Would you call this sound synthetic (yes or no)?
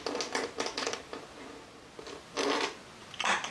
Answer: no